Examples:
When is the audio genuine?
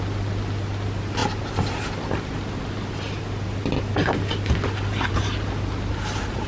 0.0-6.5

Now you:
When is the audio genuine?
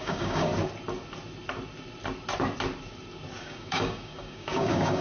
0.5-3.4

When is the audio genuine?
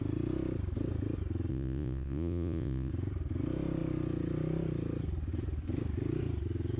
0.0-1.5; 2.9-6.8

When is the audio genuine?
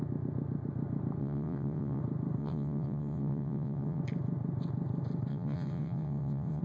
0.0-1.2; 2.0-2.4; 4.0-5.3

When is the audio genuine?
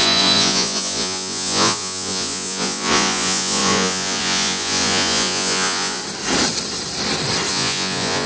6.0-7.5